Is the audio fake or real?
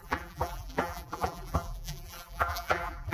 fake